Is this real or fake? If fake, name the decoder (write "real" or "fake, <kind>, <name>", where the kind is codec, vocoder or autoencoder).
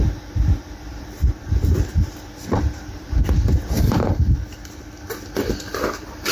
fake, vocoder, BigVGAN v2